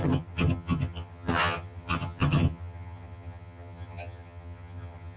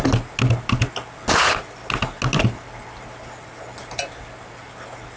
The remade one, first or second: first